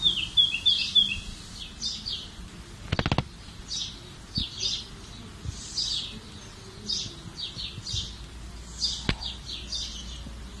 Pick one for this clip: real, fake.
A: real